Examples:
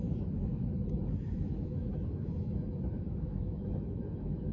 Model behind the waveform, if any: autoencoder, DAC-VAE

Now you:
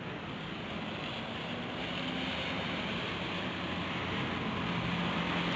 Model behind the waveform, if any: none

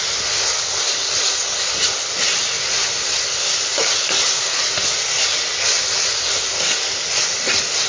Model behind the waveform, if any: none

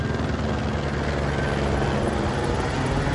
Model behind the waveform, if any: none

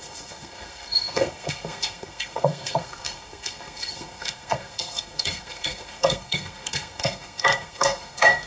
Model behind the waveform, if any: codec, SNAC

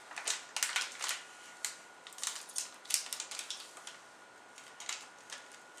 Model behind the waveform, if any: none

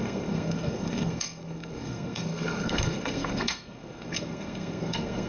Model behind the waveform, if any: codec, SNAC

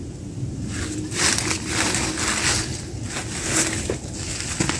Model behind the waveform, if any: none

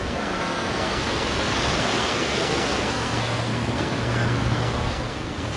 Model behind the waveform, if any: codec, SNAC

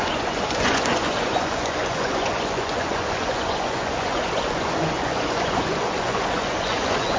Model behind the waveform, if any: vocoder, Vocos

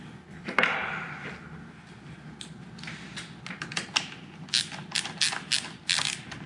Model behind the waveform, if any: none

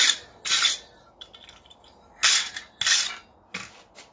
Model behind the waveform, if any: none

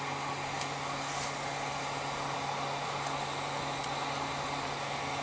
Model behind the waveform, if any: none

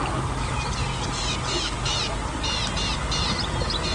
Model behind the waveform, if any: none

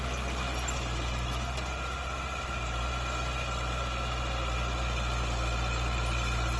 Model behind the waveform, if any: none